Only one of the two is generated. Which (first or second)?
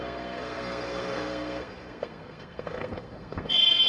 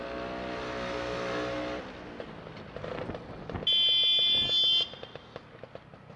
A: first